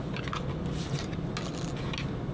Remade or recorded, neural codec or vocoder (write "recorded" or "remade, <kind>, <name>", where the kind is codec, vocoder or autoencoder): recorded